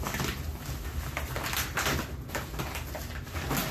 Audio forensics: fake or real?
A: real